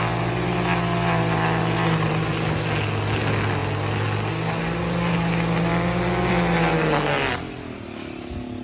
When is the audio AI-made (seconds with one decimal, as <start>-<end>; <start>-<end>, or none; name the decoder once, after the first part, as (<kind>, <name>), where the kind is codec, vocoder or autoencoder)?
none